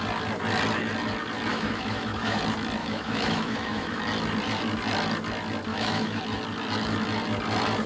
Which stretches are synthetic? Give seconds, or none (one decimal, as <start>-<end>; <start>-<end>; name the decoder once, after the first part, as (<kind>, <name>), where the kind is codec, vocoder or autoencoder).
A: 1.5-2.4 (autoencoder, DAC-VAE); 2.8-4.0; 5.7-6.2